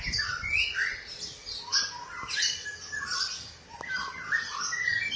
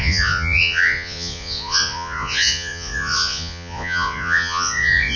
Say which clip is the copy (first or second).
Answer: second